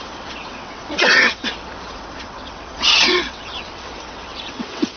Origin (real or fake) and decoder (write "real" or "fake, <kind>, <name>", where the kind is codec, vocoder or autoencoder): fake, vocoder, WaveNeXt